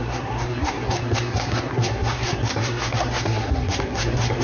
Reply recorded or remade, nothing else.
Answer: remade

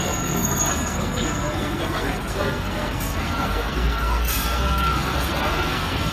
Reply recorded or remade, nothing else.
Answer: remade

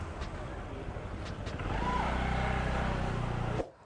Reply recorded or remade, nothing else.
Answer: recorded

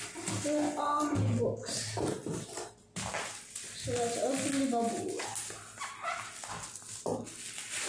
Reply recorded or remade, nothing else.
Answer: recorded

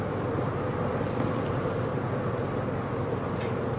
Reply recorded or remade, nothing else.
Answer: recorded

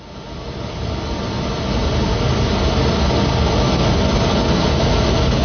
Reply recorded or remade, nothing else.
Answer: recorded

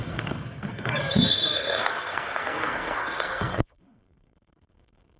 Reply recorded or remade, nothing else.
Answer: remade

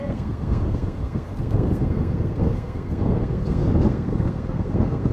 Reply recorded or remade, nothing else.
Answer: remade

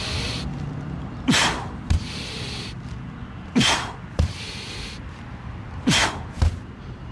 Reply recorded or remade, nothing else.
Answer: recorded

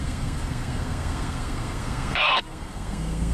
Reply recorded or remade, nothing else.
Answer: remade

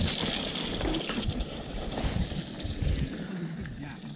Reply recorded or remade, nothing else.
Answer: recorded